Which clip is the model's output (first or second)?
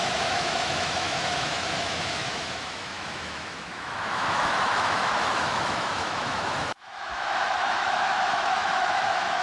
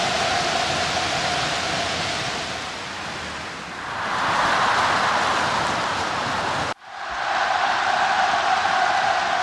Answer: first